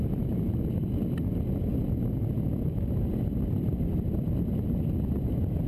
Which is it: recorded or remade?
recorded